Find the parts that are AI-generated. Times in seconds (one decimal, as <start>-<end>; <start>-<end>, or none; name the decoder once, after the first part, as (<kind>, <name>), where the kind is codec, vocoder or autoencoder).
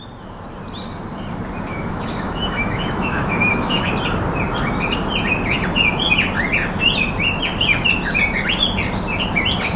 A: 1.7-3.9 (autoencoder, DAC-VAE)